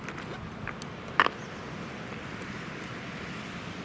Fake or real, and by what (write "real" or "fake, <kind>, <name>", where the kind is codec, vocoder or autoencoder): real